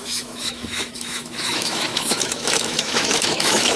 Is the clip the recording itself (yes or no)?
no